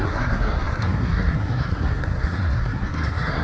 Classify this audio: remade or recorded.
remade